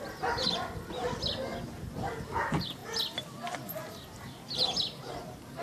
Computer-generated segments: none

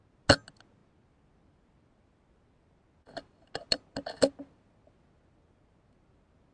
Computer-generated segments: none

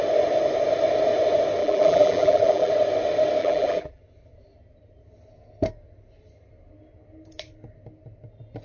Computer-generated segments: 1.6-2.7; 3.4-4.0

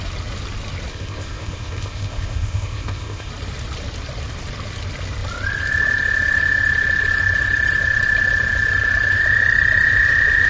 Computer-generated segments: 0.9-3.3